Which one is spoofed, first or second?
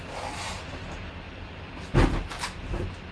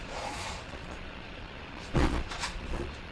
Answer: second